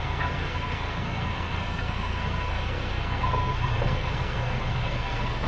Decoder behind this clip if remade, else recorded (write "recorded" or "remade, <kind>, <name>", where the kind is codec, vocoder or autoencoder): remade, codec, SNAC